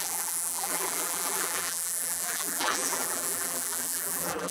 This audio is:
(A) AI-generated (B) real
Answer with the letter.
A